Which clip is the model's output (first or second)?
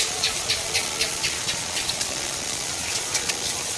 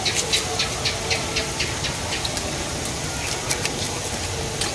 first